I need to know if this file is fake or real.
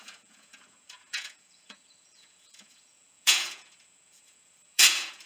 fake